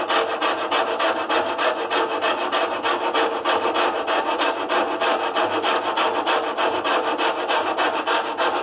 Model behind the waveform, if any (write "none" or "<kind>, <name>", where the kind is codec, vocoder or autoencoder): none